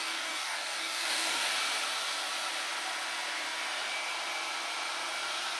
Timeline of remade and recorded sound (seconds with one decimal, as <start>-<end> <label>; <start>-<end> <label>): 0.0-1.5 remade; 1.5-5.6 recorded

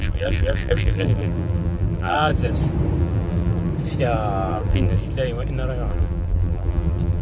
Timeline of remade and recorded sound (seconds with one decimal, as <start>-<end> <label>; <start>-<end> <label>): 0.0-2.3 remade; 2.3-3.0 recorded; 3.0-3.7 remade; 3.7-4.5 recorded; 4.5-5.0 remade; 5.0-5.9 recorded; 5.9-7.2 remade

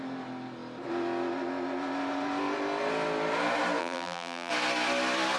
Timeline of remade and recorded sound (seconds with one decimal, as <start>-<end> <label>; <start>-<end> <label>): 0.0-3.8 recorded; 3.8-4.5 remade; 4.5-5.4 recorded

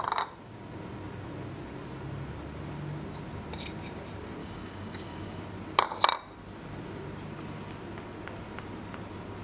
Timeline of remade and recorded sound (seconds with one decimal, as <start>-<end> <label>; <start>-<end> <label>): 0.0-4.4 recorded; 4.4-5.4 remade; 5.4-9.4 recorded

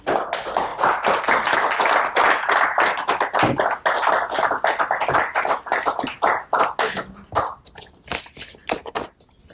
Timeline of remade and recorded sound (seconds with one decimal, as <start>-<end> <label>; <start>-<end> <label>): 0.0-0.7 recorded; 0.7-1.2 remade; 1.2-8.6 recorded; 8.6-9.1 remade; 9.1-9.5 recorded

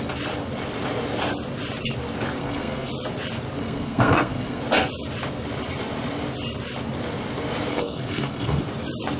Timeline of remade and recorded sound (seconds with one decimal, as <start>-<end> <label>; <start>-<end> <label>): 0.0-2.4 recorded; 2.4-2.9 remade; 2.9-3.6 recorded; 3.6-4.6 remade; 4.6-7.7 recorded; 7.7-8.6 remade; 8.6-9.2 recorded